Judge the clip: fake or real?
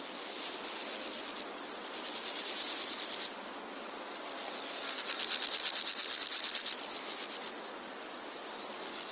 real